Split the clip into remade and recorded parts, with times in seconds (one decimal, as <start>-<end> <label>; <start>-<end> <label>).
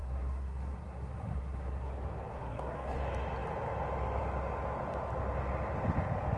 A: 0.0-1.9 remade; 1.9-2.3 recorded; 2.3-3.0 remade; 3.0-6.4 recorded